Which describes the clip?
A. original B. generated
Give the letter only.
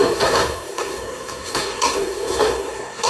B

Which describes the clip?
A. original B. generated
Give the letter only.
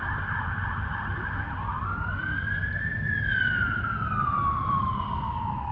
B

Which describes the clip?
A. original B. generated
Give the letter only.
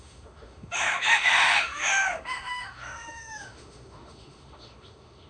B